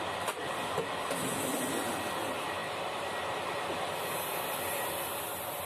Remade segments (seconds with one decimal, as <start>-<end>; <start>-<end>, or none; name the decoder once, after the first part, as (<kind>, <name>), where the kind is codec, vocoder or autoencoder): none